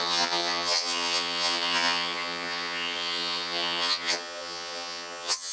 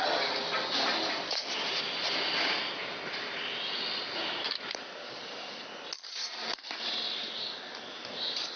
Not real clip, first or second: first